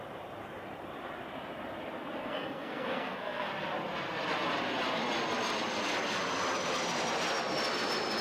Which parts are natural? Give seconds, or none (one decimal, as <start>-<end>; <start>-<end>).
0.0-2.2; 3.5-8.2